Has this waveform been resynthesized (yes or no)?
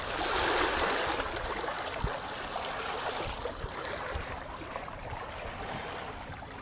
no